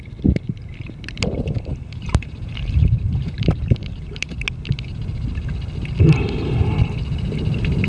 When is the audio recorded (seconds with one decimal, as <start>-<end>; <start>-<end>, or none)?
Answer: 0.0-1.7; 4.3-7.9